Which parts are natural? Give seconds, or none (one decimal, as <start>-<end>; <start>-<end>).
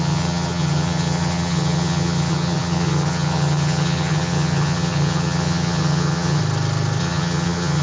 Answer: 6.4-7.0